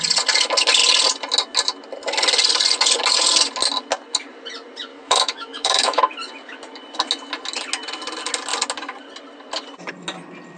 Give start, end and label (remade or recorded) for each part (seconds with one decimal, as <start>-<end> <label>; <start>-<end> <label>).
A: 0.0-4.9 recorded; 4.9-6.0 remade; 6.0-10.6 recorded